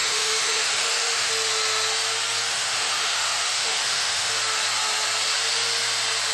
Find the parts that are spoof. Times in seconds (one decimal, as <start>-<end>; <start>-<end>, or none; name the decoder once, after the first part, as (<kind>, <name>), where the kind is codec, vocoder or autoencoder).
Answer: 0.0-1.3 (autoencoder, DAC-VAE); 2.5-4.3